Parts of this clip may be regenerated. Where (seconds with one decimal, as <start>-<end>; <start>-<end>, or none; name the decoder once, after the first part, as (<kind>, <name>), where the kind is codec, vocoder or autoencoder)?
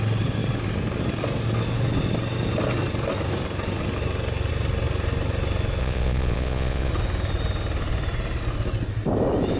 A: 5.8-6.9 (vocoder, Vocos)